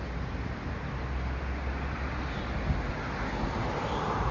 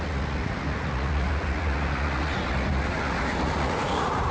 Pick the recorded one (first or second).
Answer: first